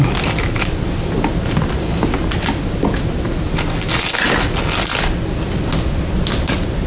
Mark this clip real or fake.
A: real